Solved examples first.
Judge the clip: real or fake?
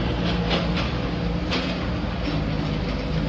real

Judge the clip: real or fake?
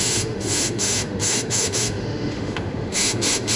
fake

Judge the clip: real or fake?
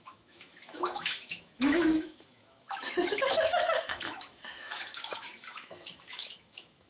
fake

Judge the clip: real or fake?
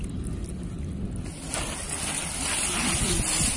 real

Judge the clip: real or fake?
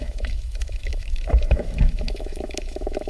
fake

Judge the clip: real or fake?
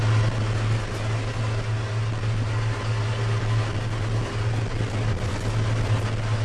real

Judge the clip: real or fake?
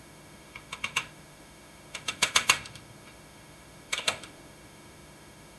fake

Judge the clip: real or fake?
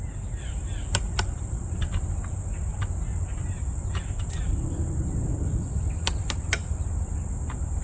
real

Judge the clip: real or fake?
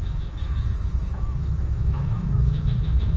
fake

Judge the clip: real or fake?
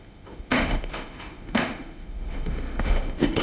fake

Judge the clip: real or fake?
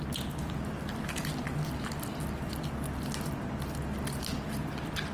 real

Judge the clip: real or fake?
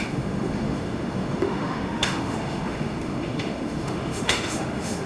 fake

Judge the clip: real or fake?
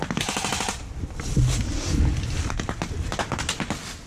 real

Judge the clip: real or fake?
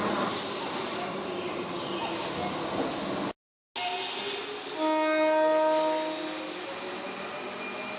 real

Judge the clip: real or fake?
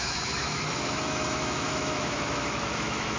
fake